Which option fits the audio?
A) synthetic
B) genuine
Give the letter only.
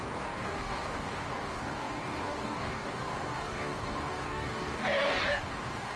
A